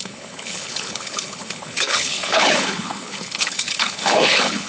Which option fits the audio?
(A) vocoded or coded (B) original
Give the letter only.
A